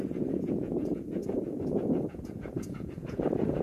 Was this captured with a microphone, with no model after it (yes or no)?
no